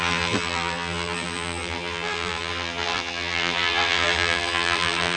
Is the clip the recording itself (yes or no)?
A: no